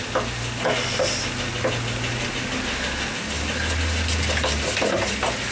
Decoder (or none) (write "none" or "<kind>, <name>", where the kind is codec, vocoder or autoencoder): none